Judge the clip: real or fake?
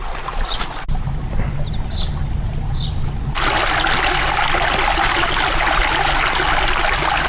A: real